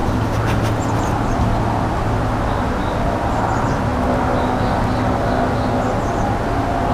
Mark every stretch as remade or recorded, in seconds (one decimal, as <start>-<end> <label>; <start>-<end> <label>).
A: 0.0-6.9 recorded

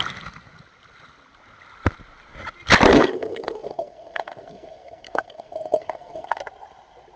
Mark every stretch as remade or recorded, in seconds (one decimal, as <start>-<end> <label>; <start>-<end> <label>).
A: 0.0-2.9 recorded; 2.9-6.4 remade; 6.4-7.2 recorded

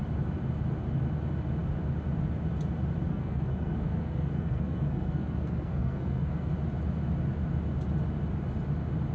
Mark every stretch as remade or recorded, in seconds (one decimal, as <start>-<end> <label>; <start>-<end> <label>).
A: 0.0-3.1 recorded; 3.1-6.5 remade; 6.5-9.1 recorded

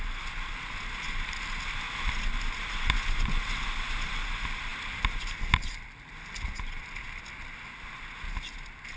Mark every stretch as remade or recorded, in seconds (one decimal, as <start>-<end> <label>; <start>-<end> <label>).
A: 0.0-9.0 recorded